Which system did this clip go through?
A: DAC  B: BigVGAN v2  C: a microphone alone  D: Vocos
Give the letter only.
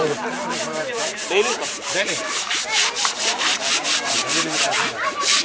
B